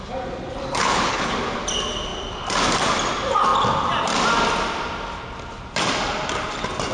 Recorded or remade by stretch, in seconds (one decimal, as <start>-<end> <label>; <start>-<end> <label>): 0.0-0.8 recorded; 0.8-1.3 remade; 1.3-6.9 recorded

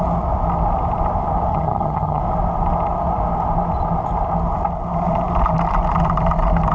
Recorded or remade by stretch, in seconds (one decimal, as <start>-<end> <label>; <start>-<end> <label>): 0.0-1.5 recorded; 1.5-2.2 remade; 2.2-6.7 recorded

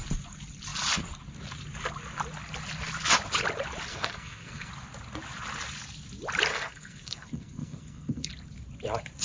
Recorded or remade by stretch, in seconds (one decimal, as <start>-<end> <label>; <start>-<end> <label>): 0.0-3.9 recorded; 3.9-4.7 remade; 4.7-6.5 recorded; 6.5-8.3 remade; 8.3-9.2 recorded

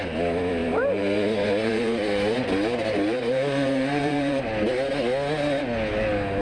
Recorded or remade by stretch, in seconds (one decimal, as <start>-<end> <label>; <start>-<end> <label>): 0.0-0.6 recorded; 0.6-4.4 remade; 4.4-6.4 recorded

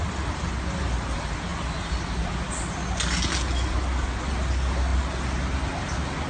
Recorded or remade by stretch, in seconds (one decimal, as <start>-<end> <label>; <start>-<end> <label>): 0.0-6.3 recorded

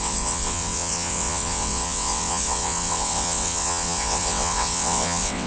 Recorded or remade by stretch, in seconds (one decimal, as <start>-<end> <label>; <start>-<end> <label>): 0.0-5.5 remade